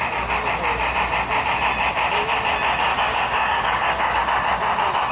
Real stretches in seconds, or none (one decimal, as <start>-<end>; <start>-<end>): 0.0-2.9; 4.2-5.1